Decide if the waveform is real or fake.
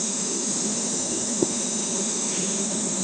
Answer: fake